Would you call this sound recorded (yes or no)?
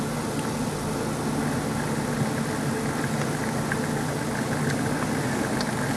yes